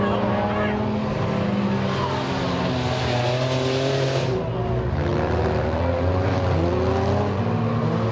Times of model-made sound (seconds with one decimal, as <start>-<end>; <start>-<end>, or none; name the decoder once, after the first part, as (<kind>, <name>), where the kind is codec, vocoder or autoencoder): none

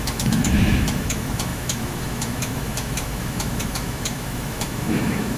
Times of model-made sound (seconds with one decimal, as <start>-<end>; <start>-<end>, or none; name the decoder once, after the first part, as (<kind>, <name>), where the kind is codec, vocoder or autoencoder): 0.0-5.4 (autoencoder, DAC-VAE)

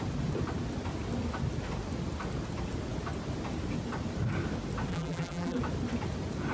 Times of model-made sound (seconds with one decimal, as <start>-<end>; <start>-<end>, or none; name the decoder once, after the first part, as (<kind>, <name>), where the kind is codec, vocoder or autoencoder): 4.9-5.6 (vocoder, BigVGAN v2)